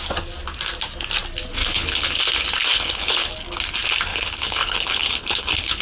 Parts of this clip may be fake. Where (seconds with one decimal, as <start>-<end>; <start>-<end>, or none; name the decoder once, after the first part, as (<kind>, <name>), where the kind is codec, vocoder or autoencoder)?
1.6-2.2 (codec, HILCodec); 2.7-3.3; 4.1-5.8